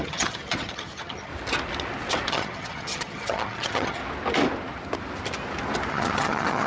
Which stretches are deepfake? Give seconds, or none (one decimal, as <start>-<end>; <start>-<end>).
0.0-1.3; 2.3-4.0; 5.9-6.7